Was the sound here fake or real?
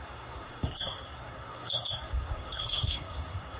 fake